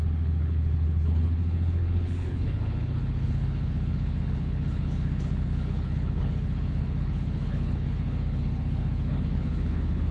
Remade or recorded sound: remade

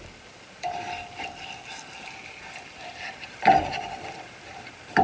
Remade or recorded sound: recorded